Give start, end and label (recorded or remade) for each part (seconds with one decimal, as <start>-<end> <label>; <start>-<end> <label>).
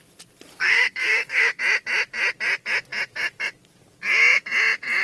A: 0.0-0.5 recorded; 0.5-1.6 remade; 1.6-5.0 recorded